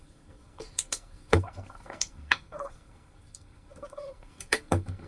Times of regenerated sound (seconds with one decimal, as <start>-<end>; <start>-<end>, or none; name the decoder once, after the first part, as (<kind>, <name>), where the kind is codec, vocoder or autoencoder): 0.0-5.1 (codec, SNAC)